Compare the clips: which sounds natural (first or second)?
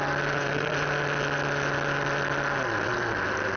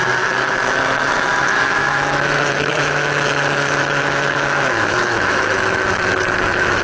first